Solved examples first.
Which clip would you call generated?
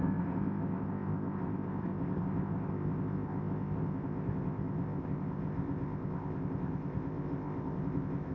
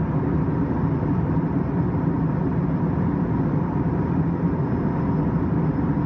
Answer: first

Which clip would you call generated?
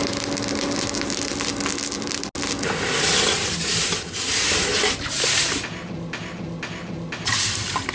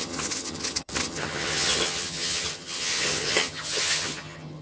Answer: second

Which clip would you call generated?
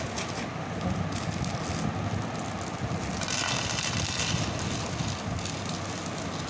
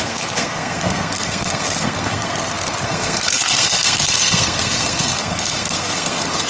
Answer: second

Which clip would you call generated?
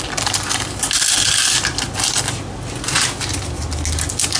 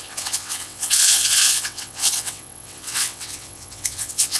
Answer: second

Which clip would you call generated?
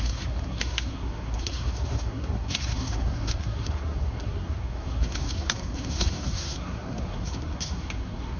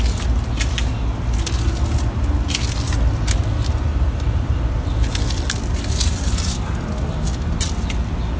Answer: first